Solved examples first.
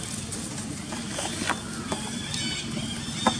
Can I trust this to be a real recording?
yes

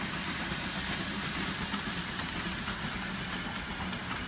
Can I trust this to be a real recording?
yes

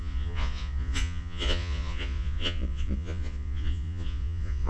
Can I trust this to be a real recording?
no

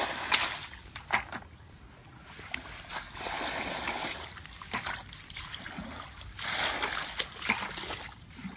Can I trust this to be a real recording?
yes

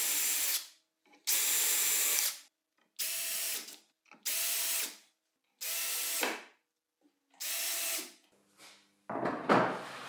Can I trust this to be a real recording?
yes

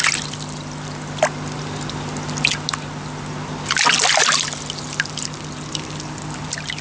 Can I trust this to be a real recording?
yes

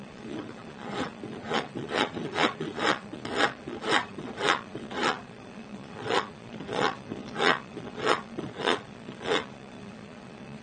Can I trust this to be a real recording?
no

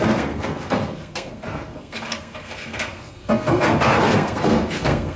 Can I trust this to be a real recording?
no